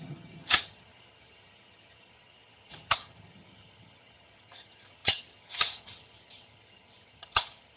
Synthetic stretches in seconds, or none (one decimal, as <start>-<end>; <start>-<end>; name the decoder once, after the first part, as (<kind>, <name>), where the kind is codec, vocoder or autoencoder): 0.0-7.8 (vocoder, HiFi-GAN)